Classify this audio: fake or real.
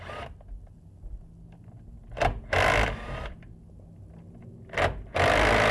real